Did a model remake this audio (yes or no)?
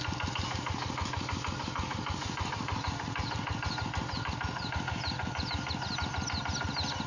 no